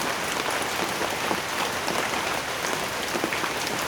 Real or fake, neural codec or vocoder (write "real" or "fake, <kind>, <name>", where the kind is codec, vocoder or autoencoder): real